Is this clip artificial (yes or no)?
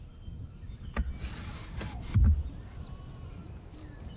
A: no